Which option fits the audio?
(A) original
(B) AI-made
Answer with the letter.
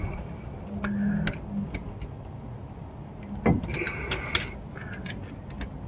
A